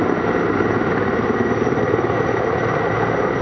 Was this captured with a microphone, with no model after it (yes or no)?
yes